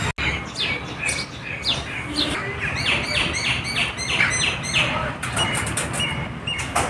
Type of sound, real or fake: real